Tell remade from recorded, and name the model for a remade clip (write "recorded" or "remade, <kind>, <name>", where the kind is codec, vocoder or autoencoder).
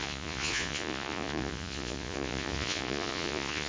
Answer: remade, vocoder, Vocos